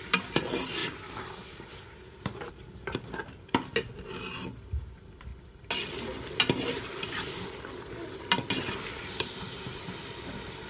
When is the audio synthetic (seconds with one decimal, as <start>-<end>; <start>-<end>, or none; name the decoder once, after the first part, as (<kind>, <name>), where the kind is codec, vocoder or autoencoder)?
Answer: none